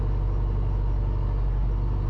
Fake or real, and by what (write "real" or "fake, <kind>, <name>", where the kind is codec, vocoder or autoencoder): real